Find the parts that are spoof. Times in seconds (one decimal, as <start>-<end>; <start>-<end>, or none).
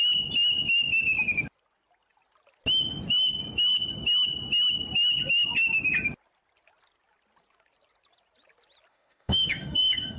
8.9-10.2